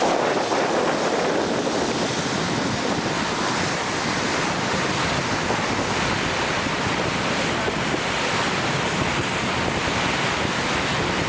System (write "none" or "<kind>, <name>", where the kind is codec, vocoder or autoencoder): none